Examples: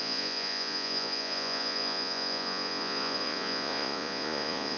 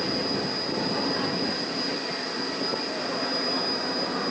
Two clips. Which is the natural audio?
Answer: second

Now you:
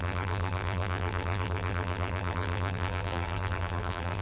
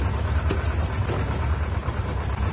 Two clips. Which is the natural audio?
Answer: second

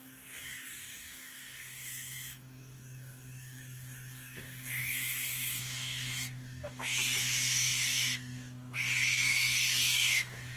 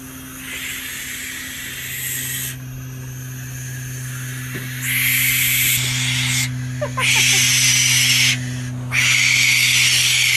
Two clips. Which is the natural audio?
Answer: second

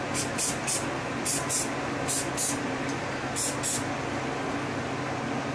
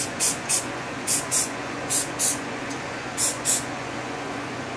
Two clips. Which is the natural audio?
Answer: first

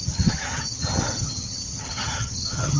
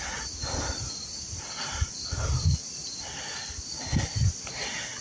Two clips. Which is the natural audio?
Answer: second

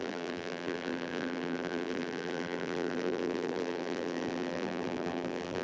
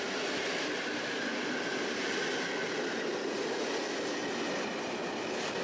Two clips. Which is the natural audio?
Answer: second